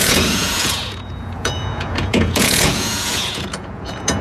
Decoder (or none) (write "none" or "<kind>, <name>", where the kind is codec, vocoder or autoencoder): vocoder, Vocos